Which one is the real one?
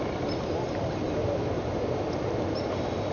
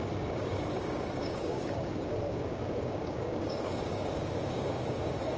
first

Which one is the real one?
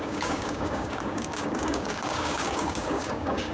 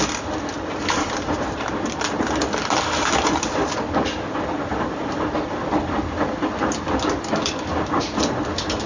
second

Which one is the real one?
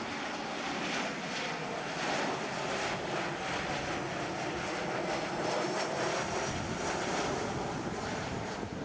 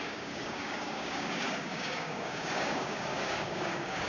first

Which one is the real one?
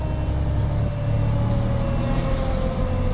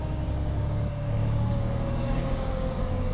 first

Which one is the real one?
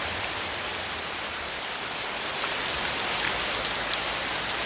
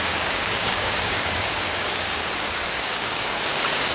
first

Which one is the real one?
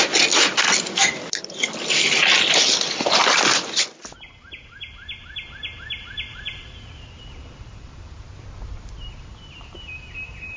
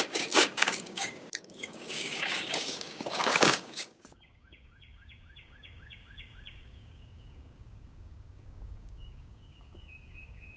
first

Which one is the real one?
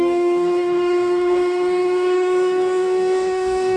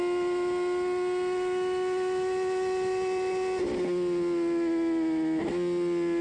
second